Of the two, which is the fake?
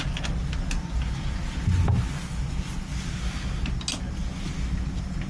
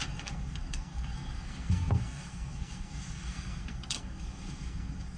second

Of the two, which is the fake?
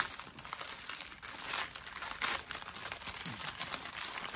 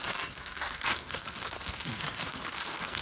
second